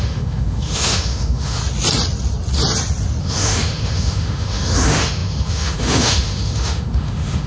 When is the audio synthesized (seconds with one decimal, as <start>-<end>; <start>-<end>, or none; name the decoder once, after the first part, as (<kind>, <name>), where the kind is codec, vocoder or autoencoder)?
0.0-1.6 (autoencoder, DAC-VAE); 3.2-7.5